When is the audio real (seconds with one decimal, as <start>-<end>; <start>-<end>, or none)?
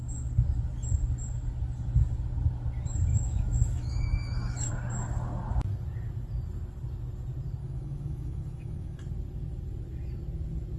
0.0-3.1; 4.7-7.6; 9.0-10.8